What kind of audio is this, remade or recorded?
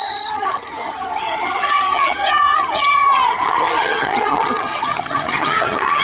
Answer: remade